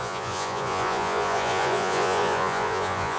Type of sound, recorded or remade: remade